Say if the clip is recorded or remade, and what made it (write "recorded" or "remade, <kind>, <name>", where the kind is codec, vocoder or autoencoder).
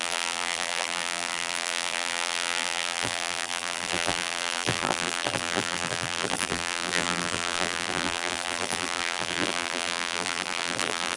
remade, vocoder, BigVGAN v2